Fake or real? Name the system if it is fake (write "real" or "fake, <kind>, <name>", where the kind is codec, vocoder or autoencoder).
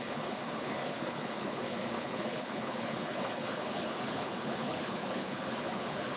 fake, codec, HILCodec